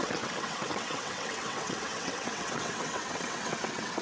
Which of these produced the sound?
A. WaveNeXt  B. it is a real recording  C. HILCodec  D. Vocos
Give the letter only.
A